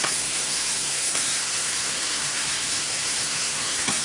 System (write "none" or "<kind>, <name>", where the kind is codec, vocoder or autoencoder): codec, SNAC